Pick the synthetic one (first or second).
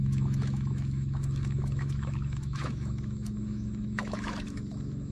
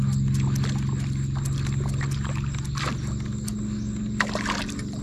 first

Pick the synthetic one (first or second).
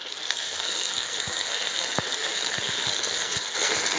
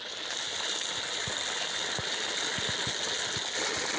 first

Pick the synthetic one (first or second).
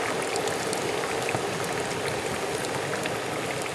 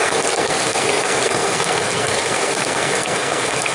second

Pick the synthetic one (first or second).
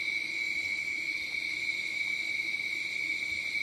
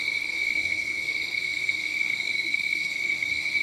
second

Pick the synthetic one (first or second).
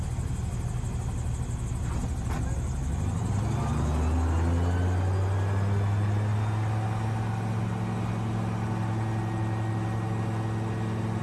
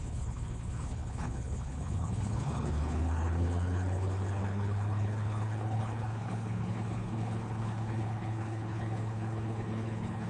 second